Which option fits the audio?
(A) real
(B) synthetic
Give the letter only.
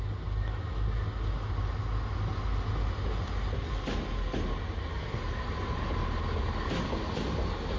A